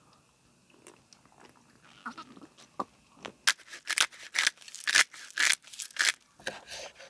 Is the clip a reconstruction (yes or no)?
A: no